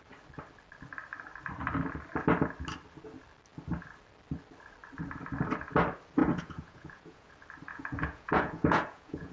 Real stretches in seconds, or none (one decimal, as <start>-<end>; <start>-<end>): 0.0-6.2; 7.3-7.7